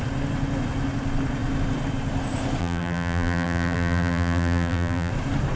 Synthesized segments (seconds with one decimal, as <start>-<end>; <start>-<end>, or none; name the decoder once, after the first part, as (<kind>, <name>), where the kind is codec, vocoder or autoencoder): 2.6-5.1 (vocoder, BigVGAN v2)